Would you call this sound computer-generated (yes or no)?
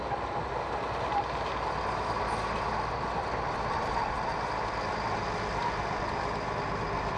no